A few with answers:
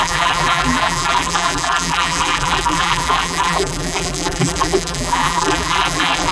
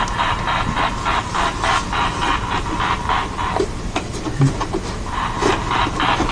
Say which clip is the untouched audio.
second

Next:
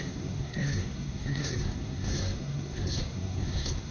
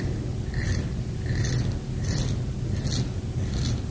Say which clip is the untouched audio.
second